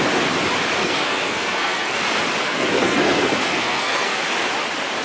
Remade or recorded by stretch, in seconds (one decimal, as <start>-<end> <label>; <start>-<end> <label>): 0.0-0.8 recorded; 0.8-2.0 remade; 2.0-2.4 recorded; 2.4-4.2 remade; 4.2-5.0 recorded